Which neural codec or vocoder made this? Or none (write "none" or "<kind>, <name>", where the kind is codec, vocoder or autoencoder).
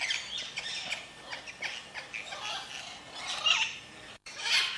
none